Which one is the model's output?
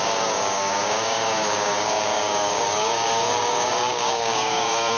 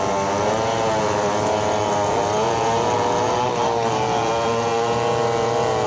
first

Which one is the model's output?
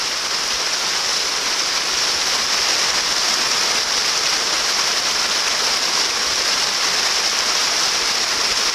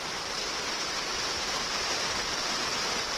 second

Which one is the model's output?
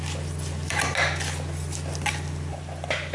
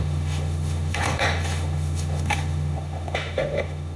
second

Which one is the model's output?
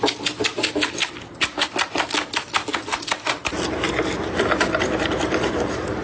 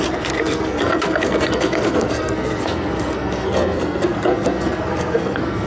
second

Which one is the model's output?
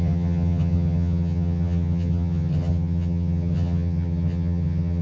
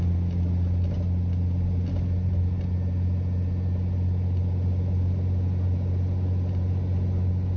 first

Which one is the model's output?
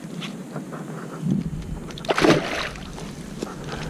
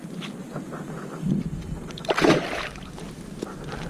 second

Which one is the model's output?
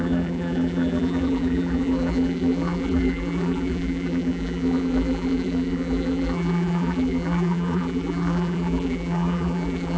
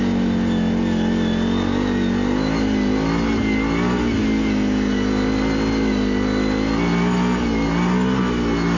first